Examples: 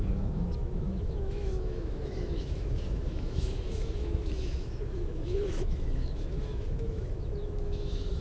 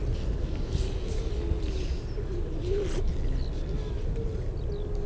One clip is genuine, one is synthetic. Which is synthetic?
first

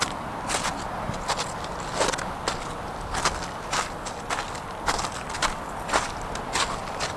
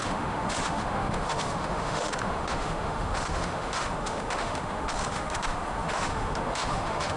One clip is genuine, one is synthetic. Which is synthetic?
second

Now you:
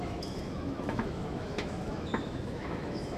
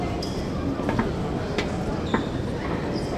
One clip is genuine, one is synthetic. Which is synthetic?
first